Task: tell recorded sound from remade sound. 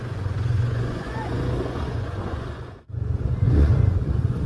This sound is remade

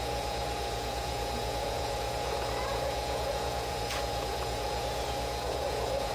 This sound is remade